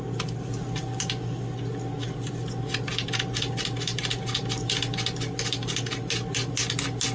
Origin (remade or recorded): recorded